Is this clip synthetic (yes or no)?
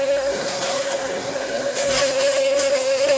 yes